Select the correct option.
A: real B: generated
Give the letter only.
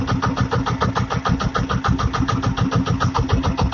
A